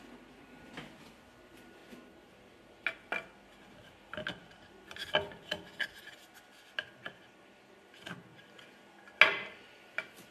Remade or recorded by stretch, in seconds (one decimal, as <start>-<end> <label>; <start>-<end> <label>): 0.0-10.3 recorded